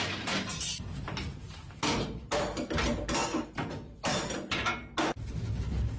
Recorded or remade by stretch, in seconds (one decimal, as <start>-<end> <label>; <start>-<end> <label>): 0.0-6.0 recorded